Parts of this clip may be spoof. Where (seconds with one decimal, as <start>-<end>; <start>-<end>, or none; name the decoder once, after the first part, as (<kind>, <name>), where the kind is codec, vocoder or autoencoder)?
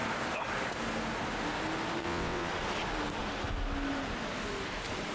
2.0-2.5 (vocoder, WaveNeXt)